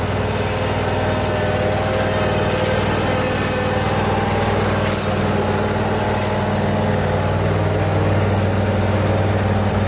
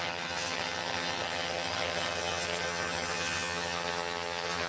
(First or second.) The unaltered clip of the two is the first